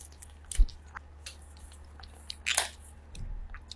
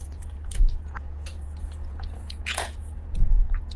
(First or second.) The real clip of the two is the first